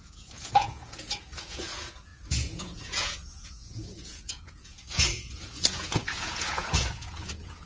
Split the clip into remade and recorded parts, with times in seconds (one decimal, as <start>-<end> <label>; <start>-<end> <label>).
0.0-7.7 remade